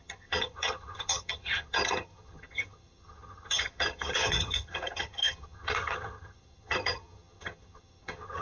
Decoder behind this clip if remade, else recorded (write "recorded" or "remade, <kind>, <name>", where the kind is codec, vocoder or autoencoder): remade, vocoder, HiFi-GAN